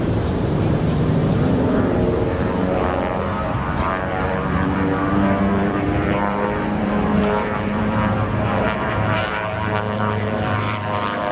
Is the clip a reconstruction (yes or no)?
yes